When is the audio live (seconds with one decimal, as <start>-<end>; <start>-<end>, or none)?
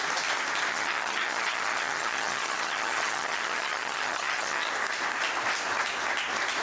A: 0.0-0.7; 4.7-6.6